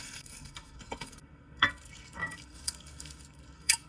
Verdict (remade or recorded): remade